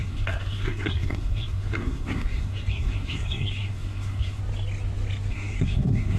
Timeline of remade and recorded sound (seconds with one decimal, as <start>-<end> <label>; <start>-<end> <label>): 0.0-4.4 remade; 4.4-5.3 recorded; 5.3-6.2 remade